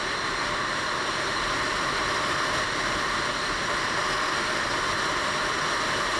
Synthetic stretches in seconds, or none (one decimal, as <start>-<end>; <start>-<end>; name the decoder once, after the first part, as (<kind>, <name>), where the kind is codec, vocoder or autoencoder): none